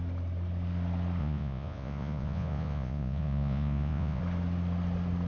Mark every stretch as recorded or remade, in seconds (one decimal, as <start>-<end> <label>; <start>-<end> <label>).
0.0-1.2 recorded; 1.2-4.2 remade; 4.2-5.3 recorded